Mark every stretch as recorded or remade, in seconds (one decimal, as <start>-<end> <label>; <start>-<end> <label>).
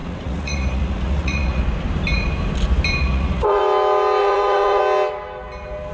0.0-1.6 remade; 1.6-3.0 recorded; 3.0-3.6 remade; 3.6-4.2 recorded; 4.2-4.8 remade; 4.8-5.9 recorded